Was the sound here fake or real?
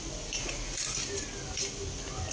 real